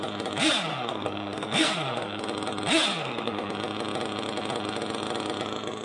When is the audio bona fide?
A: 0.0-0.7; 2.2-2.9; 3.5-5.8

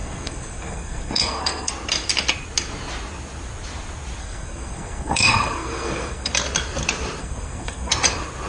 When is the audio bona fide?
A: 1.7-4.2; 6.3-7.2; 7.9-8.5